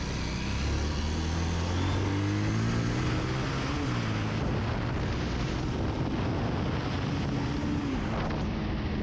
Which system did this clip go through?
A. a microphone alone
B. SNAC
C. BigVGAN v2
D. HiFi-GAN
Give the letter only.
A